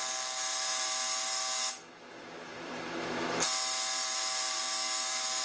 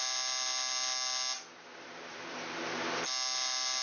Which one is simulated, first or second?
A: first